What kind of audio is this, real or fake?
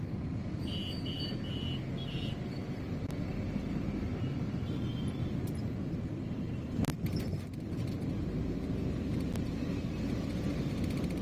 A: real